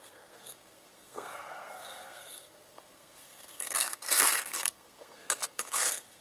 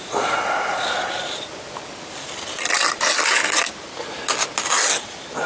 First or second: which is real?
second